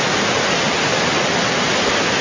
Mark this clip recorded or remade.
recorded